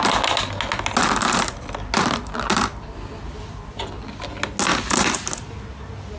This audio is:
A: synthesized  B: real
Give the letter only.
B